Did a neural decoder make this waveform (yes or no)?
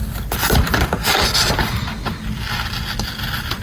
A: no